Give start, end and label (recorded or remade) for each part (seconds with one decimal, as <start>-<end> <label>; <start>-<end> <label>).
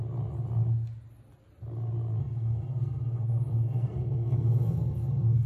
0.0-2.2 recorded; 2.2-5.5 remade